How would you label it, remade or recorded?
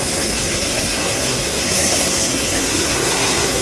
remade